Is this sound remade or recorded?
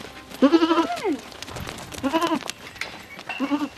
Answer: recorded